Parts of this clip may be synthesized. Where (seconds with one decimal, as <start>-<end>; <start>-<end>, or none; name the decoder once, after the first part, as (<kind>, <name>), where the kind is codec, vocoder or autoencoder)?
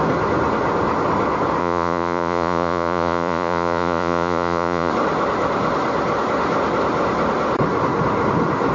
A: 1.6-4.9 (vocoder, Vocos)